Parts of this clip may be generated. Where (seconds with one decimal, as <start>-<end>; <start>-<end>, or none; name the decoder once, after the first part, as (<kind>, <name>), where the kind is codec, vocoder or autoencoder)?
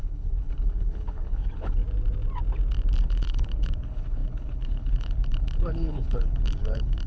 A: 0.0-1.8 (codec, HILCodec); 3.0-7.1